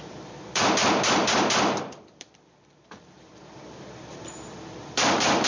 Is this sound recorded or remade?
remade